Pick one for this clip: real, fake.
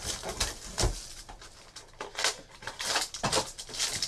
real